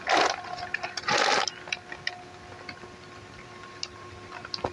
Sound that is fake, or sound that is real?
real